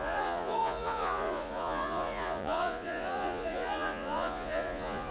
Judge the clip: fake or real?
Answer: fake